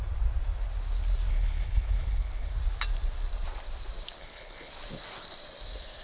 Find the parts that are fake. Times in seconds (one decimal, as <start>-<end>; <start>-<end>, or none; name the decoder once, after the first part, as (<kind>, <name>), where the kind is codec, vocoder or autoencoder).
1.3-2.5 (codec, HILCodec); 4.2-4.7